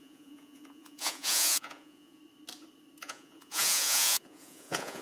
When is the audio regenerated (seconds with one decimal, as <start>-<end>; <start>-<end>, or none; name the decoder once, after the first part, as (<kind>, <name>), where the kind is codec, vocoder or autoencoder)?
0.0-2.2 (vocoder, Vocos); 3.0-5.0